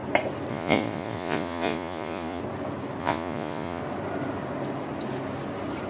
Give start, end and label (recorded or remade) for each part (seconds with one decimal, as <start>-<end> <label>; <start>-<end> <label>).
0.0-0.5 recorded; 0.5-2.4 remade; 2.4-3.0 recorded; 3.0-3.8 remade; 3.8-5.9 recorded